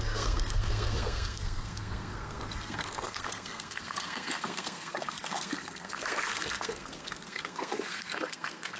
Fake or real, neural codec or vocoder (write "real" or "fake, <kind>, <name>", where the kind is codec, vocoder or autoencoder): fake, codec, SNAC